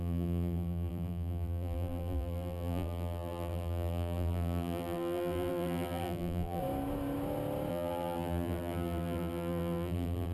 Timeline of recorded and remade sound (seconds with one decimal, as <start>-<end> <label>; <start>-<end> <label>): 0.0-6.6 remade; 6.6-7.7 recorded; 7.7-10.3 remade